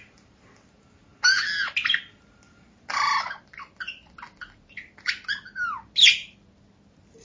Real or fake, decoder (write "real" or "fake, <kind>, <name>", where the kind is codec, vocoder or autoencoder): real